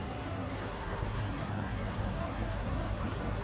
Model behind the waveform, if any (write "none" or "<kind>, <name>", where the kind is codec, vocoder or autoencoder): codec, SNAC